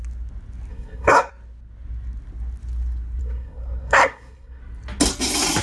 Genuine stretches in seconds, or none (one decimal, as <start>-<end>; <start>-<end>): 0.0-0.7; 1.3-3.2; 4.6-5.6